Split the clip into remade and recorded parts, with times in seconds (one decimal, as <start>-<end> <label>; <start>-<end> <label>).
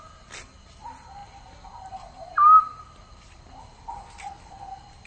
0.0-5.1 recorded